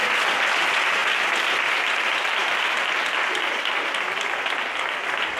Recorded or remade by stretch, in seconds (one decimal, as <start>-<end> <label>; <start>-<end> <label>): 0.0-5.4 recorded